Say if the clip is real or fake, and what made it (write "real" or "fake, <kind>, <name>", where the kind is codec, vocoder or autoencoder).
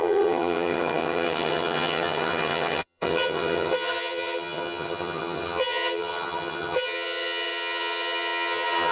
fake, vocoder, HiFi-GAN